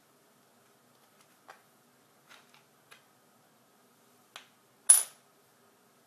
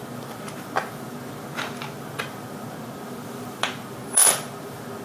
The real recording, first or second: first